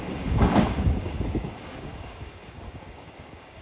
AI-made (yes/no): yes